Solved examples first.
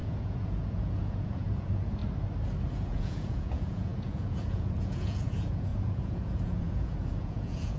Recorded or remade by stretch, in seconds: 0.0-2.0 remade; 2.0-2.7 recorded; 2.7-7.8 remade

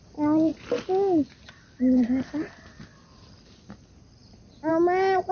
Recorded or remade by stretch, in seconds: 0.0-5.3 recorded

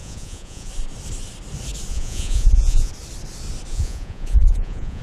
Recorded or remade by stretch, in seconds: 0.0-0.7 remade; 0.7-1.9 recorded; 1.9-2.9 remade; 2.9-3.7 recorded; 3.7-5.0 remade

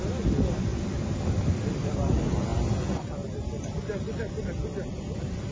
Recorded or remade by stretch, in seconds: 0.0-5.5 recorded

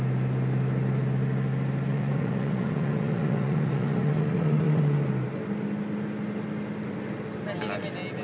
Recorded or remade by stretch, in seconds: 0.0-1.9 recorded; 1.9-4.8 remade; 4.8-8.2 recorded

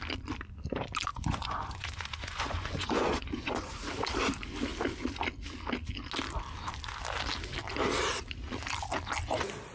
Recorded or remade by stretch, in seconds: 0.0-1.1 recorded; 1.1-3.8 remade; 3.8-9.7 recorded

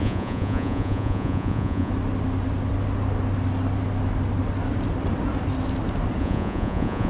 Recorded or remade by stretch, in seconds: 0.0-1.9 remade; 1.9-6.2 recorded; 6.2-7.1 remade

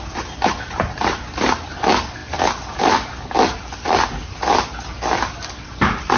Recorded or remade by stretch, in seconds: 0.0-6.2 recorded